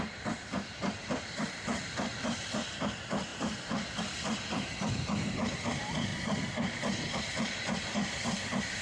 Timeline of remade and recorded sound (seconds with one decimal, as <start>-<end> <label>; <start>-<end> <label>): 0.0-8.8 remade